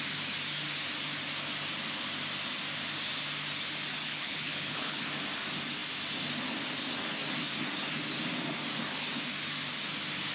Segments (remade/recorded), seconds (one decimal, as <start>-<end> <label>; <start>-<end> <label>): 0.0-4.0 recorded; 4.0-5.0 remade; 5.0-10.3 recorded